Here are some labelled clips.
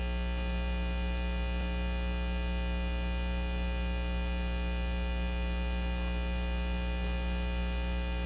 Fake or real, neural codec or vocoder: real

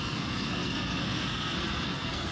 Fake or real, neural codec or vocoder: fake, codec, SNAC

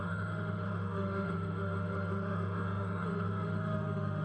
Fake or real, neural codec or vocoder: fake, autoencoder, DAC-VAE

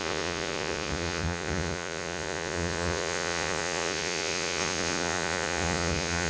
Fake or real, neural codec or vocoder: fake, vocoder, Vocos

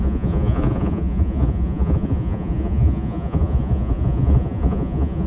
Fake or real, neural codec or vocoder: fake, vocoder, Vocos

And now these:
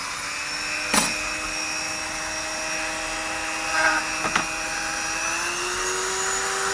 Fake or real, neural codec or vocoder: fake, vocoder, BigVGAN v2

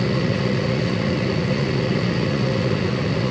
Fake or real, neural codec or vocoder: fake, vocoder, Vocos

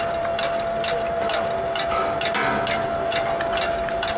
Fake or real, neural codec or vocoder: real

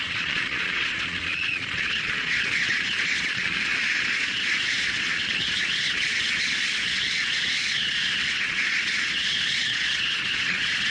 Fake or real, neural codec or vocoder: fake, vocoder, Vocos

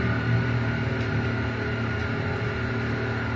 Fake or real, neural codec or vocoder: real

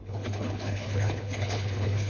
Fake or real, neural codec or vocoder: fake, codec, HILCodec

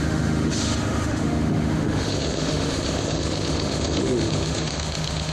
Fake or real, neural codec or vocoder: fake, autoencoder, DAC-VAE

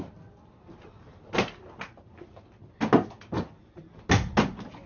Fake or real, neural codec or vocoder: real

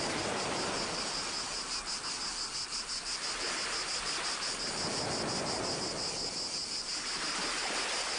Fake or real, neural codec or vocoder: real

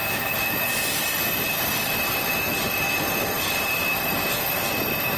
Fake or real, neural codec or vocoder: real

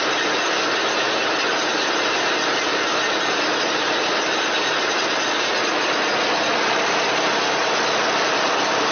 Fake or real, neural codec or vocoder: real